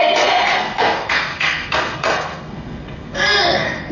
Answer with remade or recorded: remade